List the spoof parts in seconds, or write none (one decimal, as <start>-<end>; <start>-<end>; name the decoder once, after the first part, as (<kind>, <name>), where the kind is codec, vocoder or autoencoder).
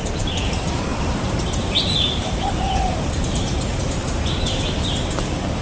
0.0-3.7 (vocoder, BigVGAN v2)